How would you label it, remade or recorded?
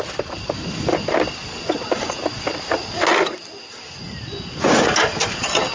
recorded